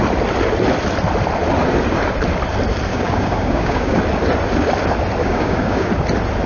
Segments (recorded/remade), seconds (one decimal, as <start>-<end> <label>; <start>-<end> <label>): 0.0-2.9 recorded; 2.9-4.0 remade; 4.0-5.2 recorded; 5.2-5.9 remade; 5.9-6.5 recorded